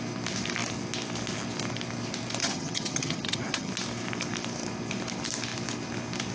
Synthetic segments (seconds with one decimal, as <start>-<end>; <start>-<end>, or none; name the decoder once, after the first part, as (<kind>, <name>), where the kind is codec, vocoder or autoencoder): 2.4-3.7 (vocoder, HiFi-GAN)